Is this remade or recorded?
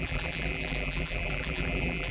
remade